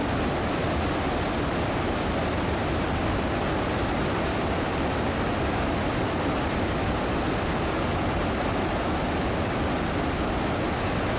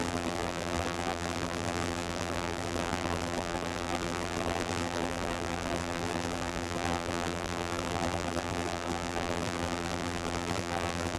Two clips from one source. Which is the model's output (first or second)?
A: second